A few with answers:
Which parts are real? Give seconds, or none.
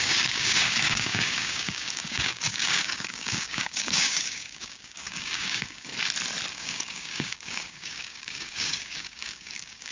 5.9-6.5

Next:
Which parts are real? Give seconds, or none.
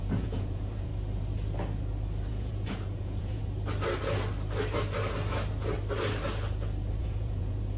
0.9-2.3; 3.4-7.0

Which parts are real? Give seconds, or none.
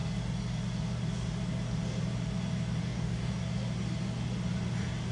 0.0-2.8; 3.3-5.1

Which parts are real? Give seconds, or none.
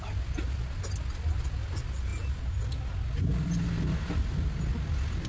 0.0-5.3